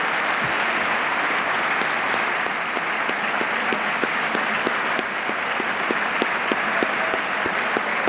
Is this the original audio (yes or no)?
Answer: yes